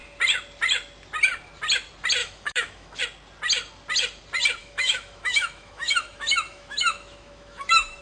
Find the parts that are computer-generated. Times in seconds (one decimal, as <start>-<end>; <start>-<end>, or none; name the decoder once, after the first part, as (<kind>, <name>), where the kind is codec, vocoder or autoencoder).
2.2-3.0 (autoencoder, DAC-VAE); 4.6-8.0